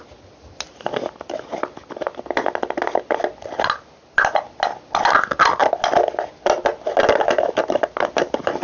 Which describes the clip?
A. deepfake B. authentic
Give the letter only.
B